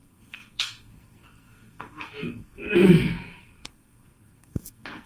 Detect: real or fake fake